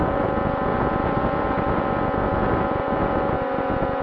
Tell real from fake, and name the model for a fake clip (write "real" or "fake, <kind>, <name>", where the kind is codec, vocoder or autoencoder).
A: real